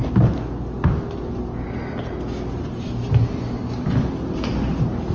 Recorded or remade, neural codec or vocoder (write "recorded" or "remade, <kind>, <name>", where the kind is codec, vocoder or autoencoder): recorded